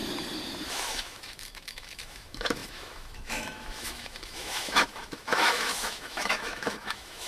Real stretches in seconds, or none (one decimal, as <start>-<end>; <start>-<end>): 0.0-0.7